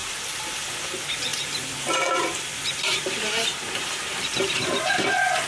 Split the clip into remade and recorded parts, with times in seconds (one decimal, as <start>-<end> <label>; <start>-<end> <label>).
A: 0.0-0.6 remade; 0.6-1.3 recorded; 1.3-4.6 remade; 4.6-5.5 recorded